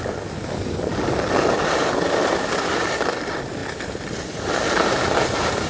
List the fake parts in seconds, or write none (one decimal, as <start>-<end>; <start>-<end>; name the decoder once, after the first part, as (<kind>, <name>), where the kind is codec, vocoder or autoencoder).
2.2-2.7 (vocoder, BigVGAN v2); 3.6-5.7